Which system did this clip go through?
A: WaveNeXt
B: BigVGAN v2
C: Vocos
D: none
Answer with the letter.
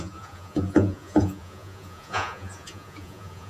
C